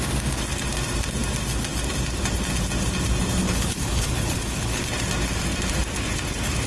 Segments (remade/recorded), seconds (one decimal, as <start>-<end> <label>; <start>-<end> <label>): 0.0-3.4 recorded; 3.4-4.8 remade; 4.8-6.7 recorded